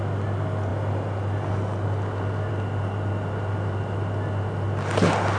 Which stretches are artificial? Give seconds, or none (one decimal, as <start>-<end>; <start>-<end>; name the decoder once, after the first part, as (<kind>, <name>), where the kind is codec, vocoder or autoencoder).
none